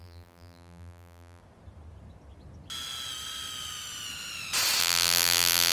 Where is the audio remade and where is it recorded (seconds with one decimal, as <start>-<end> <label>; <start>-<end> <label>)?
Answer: 0.0-1.4 remade; 1.4-4.8 recorded; 4.8-5.7 remade